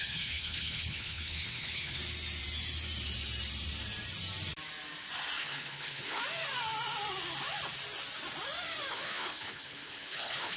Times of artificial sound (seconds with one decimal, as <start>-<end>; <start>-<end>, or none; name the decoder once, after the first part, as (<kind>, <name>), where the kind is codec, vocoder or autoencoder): 0.0-2.0 (codec, HILCodec); 5.4-6.2; 8.9-10.6